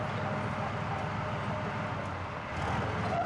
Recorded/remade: recorded